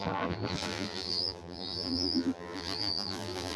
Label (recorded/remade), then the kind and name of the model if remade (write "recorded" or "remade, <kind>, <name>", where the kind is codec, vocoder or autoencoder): remade, vocoder, BigVGAN v2